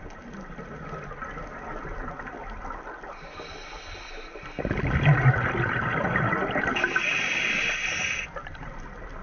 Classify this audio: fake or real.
real